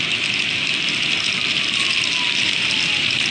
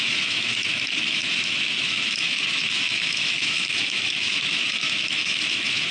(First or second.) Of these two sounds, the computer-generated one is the second